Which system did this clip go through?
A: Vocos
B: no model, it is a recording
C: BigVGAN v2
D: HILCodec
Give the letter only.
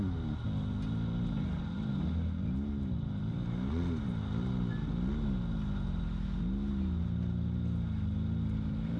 B